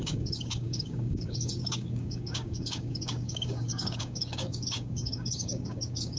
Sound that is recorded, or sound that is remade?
remade